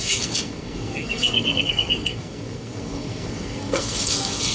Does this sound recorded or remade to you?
remade